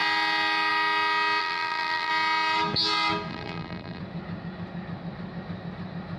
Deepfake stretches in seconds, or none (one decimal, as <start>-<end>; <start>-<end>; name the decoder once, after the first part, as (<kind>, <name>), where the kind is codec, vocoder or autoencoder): 1.4-2.1 (vocoder, BigVGAN v2); 3.3-4.0